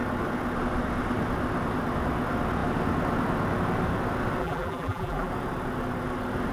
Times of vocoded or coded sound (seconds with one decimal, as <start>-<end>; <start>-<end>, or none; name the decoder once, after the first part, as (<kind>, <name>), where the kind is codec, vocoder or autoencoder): 4.4-5.3 (vocoder, BigVGAN v2)